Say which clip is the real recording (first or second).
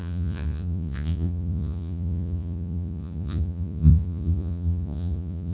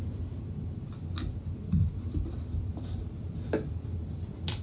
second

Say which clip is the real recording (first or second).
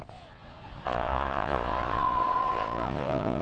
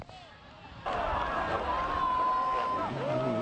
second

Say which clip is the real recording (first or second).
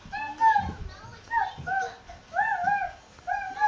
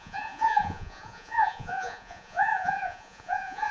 first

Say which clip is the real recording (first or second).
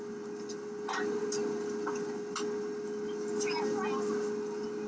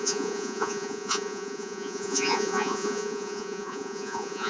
first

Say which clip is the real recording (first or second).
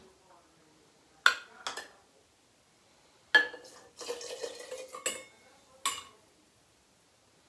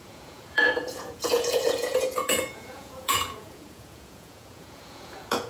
first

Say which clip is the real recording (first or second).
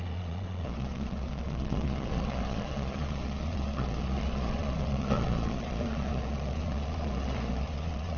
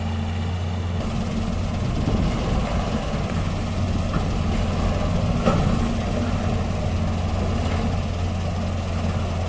second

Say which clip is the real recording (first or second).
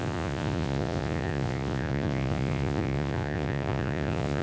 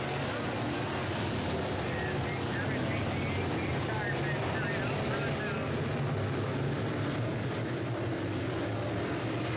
second